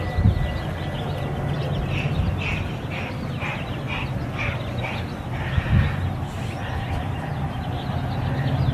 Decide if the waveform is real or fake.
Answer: real